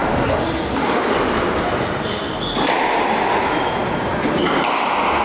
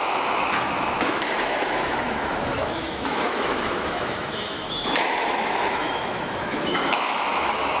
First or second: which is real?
first